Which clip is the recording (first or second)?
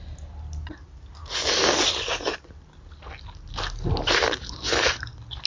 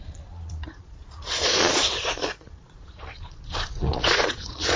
first